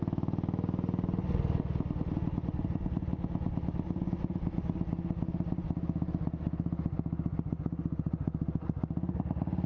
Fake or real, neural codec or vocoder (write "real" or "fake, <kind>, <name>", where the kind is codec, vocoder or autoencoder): real